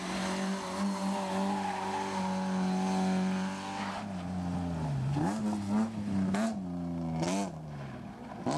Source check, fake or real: real